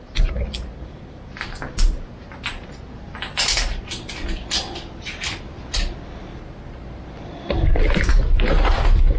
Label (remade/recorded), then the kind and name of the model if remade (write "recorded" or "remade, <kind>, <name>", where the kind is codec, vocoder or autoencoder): recorded